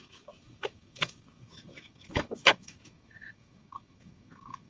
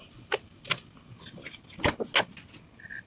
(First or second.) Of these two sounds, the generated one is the first